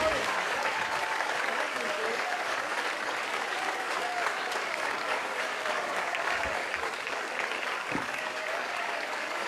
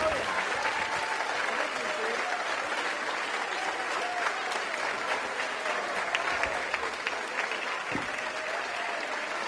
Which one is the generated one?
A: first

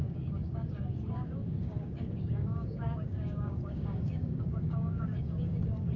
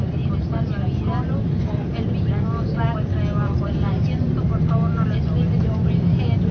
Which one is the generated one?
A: first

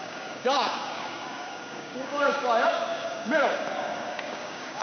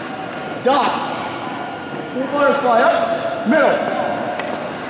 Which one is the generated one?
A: first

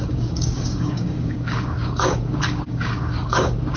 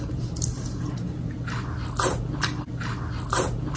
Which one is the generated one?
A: first